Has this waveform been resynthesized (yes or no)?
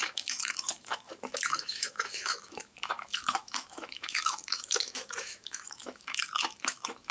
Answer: yes